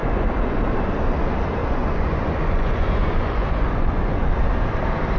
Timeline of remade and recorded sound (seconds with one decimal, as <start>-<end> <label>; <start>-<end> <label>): 0.0-0.6 remade; 0.6-1.6 recorded; 1.6-4.3 remade; 4.3-5.2 recorded